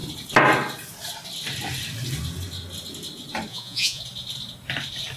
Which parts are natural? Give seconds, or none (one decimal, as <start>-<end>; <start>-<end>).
0.0-3.5; 4.0-5.2